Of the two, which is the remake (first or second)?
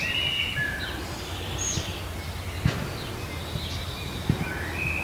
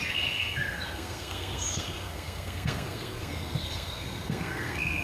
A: second